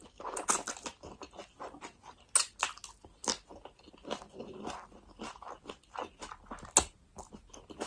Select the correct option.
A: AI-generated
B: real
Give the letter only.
B